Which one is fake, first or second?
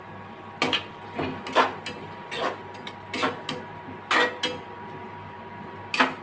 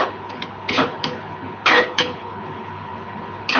second